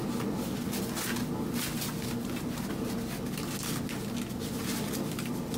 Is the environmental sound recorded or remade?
recorded